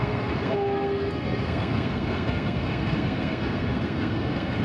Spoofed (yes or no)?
yes